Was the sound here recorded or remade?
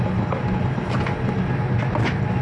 recorded